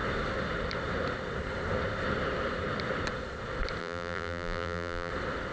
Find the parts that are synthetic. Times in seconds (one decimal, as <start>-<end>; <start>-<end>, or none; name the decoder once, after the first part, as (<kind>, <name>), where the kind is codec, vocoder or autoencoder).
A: 3.8-5.1 (vocoder, BigVGAN v2)